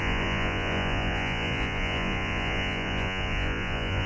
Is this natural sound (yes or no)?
no